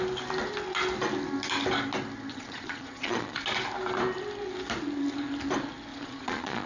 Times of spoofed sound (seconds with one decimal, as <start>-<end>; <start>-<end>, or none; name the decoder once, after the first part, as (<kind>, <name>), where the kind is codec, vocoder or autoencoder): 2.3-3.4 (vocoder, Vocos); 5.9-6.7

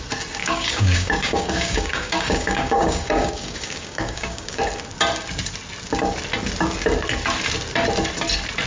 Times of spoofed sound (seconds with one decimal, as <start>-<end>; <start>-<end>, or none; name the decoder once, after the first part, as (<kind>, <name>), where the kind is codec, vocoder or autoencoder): 0.4-4.6 (codec, DAC)

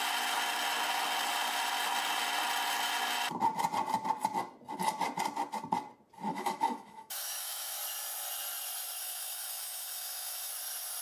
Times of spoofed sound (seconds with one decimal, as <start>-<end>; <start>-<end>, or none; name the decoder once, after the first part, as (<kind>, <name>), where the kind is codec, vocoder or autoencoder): 6.3-7.8 (autoencoder, DAC-VAE); 9.0-10.5

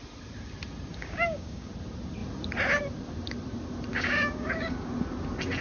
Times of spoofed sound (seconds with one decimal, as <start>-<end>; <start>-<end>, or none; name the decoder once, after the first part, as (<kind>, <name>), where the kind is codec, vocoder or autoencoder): 0.9-1.7 (codec, DAC); 3.9-4.9

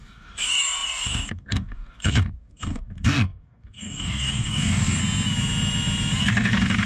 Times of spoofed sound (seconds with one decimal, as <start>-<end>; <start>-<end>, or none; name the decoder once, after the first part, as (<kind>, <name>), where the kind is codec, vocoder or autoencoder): 0.0-5.0 (codec, DAC); 6.2-6.9